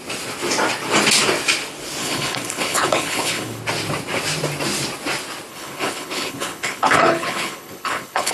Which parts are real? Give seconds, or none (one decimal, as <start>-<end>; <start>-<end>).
0.0-2.0; 3.6-5.5